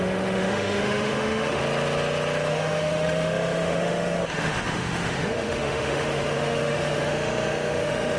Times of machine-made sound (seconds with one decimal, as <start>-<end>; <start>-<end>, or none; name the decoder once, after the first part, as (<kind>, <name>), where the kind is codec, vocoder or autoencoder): 0.0-1.6 (autoencoder, DAC-VAE); 2.5-8.2